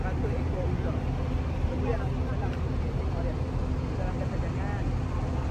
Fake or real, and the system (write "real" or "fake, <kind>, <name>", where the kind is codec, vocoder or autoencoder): real